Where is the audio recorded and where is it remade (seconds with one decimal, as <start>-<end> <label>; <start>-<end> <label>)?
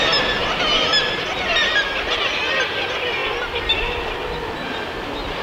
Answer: 0.0-5.4 recorded